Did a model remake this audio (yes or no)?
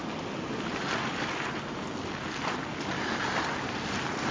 no